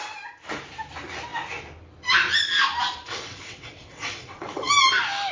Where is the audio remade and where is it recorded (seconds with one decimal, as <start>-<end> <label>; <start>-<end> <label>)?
0.0-3.1 recorded; 3.1-4.7 remade; 4.7-5.3 recorded